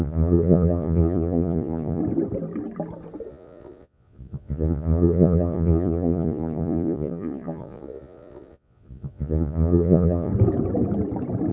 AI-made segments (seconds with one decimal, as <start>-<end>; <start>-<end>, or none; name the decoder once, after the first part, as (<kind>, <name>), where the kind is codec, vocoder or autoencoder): 0.0-2.0 (vocoder, Vocos); 3.3-10.3